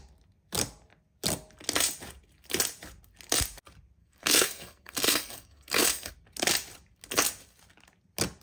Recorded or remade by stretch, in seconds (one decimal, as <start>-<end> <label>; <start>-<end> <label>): 0.0-4.0 recorded; 4.0-6.1 remade; 6.1-8.4 recorded

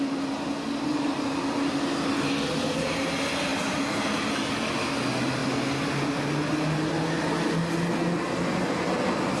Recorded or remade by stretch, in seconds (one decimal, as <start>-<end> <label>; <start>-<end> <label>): 0.0-9.4 recorded

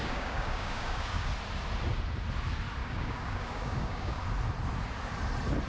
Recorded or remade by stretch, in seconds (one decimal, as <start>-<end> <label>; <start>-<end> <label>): 0.0-1.3 remade; 1.3-2.8 recorded; 2.8-4.2 remade; 4.2-5.7 recorded

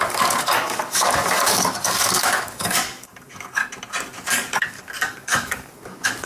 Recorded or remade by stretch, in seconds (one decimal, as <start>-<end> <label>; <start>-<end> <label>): 0.0-3.6 remade; 3.6-4.1 recorded; 4.1-6.3 remade